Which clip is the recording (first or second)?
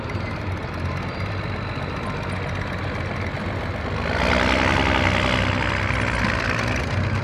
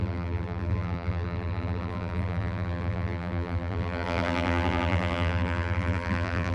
first